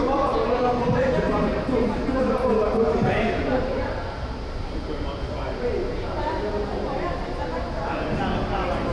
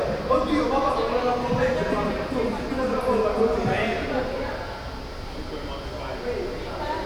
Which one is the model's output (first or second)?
first